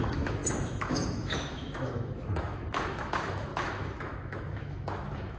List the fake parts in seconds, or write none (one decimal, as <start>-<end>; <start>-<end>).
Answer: 0.0-5.4